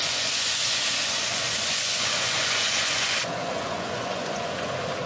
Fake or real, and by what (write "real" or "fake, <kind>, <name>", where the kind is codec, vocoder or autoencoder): fake, vocoder, Vocos